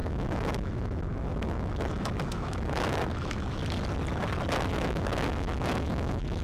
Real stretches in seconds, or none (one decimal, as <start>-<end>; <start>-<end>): 3.6-4.7